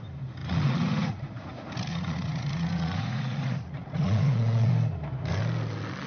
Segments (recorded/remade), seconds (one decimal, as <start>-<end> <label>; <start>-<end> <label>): 0.0-0.4 recorded; 0.4-1.5 remade; 1.5-1.9 recorded; 1.9-4.7 remade; 4.7-6.1 recorded